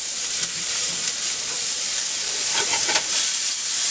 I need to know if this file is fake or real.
fake